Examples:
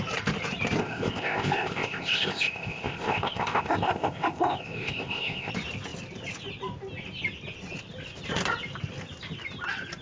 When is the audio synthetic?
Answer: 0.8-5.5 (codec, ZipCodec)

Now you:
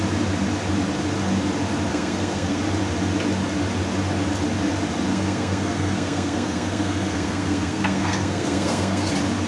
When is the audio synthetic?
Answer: 1.9-2.6 (codec, SNAC); 5.1-9.1

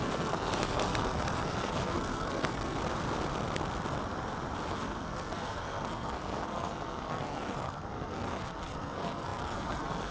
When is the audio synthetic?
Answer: 0.0-2.8 (codec, SNAC); 4.7-10.1

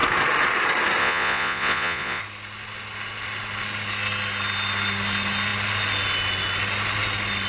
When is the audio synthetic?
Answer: 1.0-2.2 (vocoder, Vocos)

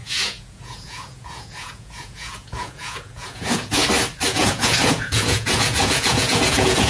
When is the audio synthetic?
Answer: 0.0-3.8 (vocoder, Vocos); 4.3-6.9

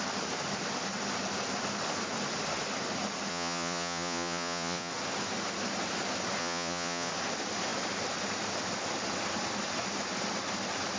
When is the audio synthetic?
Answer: 3.3-4.9 (vocoder, Vocos); 6.4-7.1

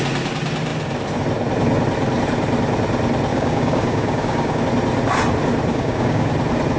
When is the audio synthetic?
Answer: 3.3-4.6 (codec, DAC); 5.7-6.3

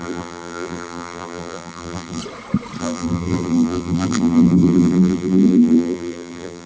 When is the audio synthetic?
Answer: 0.0-2.2 (vocoder, BigVGAN v2); 2.8-6.7